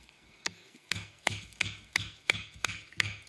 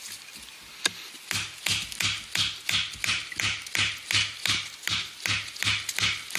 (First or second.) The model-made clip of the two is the first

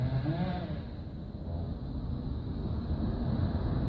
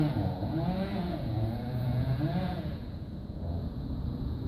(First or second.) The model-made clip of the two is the second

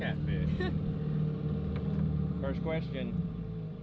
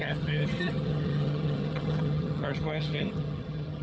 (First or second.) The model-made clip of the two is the second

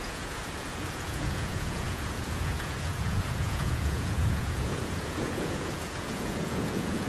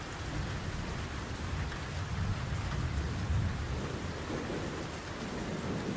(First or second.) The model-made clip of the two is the first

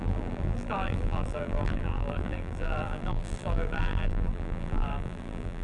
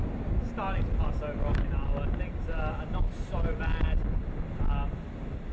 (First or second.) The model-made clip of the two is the first